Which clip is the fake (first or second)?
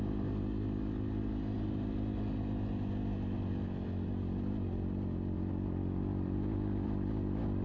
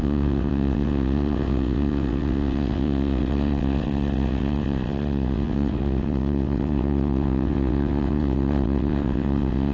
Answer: second